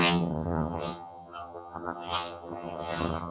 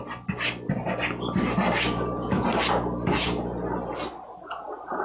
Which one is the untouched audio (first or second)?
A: second